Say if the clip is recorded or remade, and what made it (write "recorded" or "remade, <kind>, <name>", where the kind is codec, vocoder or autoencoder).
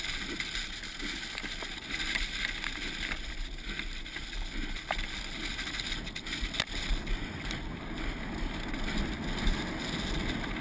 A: recorded